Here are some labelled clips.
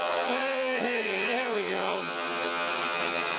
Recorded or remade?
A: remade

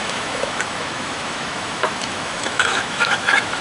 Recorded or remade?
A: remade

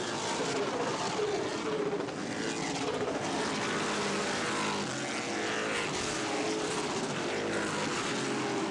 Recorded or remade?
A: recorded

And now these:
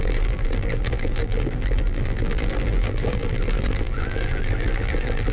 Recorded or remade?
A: remade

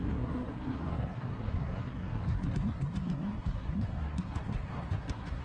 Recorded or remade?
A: remade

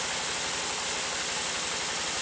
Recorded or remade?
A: recorded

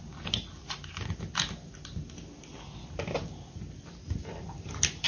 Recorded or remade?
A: recorded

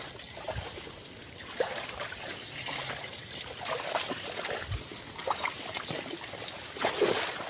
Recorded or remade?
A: recorded